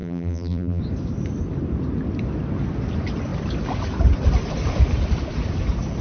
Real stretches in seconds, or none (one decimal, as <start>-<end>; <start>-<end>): 0.8-6.0